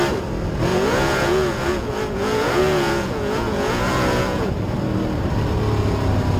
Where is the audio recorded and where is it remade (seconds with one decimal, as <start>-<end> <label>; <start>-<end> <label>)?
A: 0.0-0.7 recorded; 0.7-4.5 remade; 4.5-6.4 recorded